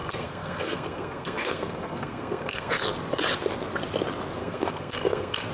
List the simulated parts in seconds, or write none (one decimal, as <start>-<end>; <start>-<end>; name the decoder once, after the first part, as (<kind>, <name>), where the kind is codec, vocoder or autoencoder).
0.0-2.7 (codec, SNAC); 4.4-5.5